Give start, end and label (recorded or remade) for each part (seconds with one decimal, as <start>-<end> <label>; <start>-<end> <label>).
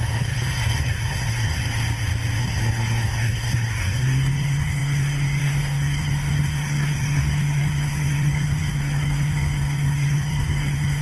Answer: 0.0-1.6 remade; 1.6-2.4 recorded; 2.4-11.0 remade